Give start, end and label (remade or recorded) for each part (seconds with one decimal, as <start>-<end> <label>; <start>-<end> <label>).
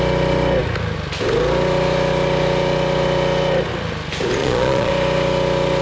0.0-4.4 recorded; 4.4-4.9 remade; 4.9-5.8 recorded